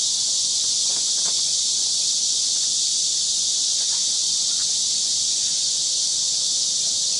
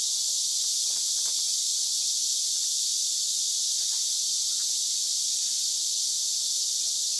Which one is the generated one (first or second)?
first